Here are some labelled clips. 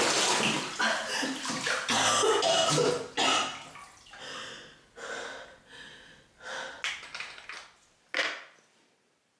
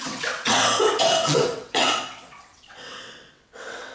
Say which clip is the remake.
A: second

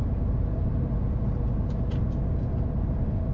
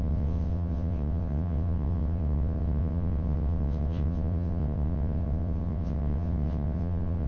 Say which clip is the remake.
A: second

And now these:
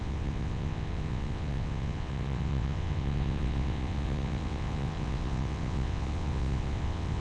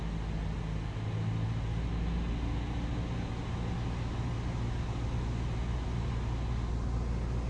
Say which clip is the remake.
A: first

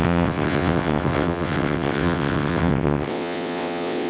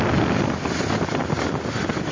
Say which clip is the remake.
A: first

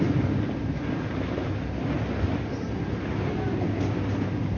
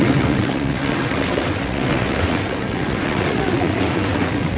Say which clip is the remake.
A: second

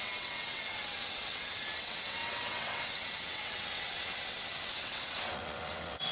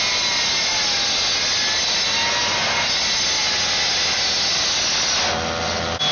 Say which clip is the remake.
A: first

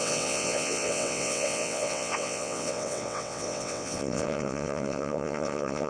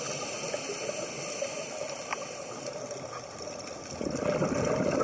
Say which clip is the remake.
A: first